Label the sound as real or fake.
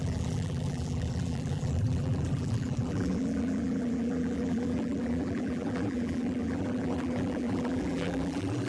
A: fake